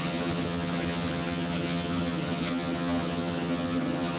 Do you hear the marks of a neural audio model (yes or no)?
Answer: yes